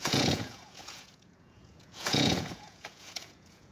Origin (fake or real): fake